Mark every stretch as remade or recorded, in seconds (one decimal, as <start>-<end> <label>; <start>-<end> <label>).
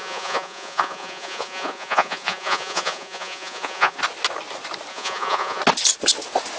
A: 0.0-4.0 remade; 4.0-4.9 recorded; 4.9-5.6 remade; 5.6-6.6 recorded